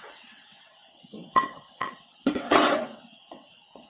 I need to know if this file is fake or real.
fake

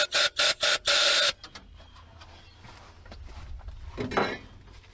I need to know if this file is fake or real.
real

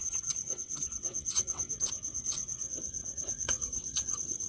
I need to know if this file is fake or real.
fake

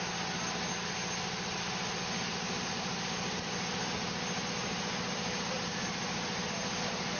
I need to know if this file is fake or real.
real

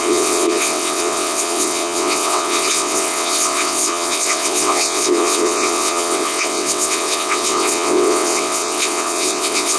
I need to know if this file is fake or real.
fake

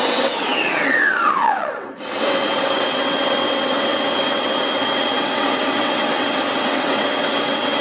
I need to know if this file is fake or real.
fake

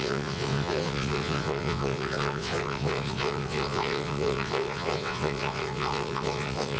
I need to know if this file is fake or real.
fake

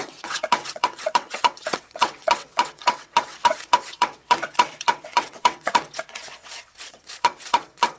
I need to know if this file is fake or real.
fake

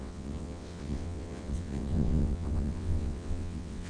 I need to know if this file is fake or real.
fake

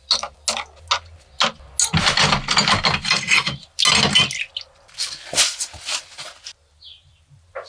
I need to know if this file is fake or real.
real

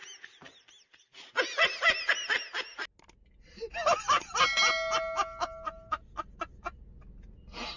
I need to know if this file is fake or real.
real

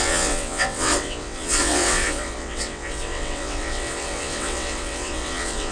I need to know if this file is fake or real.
fake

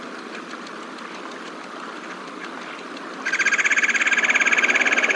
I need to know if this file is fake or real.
real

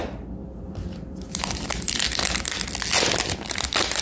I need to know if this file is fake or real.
real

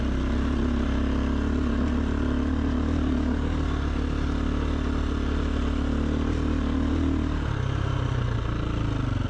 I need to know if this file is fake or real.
real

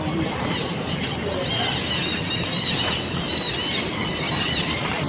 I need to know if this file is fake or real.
real